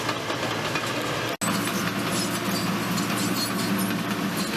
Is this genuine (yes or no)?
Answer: yes